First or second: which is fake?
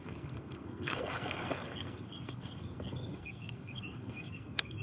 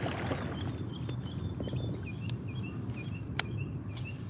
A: first